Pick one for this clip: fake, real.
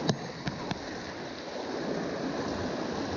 real